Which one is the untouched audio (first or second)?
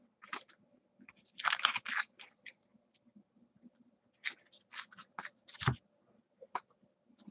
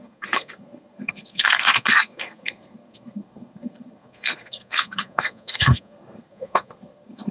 first